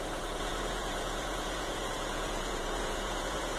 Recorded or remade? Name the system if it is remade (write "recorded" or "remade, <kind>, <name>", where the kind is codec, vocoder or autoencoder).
remade, vocoder, Vocos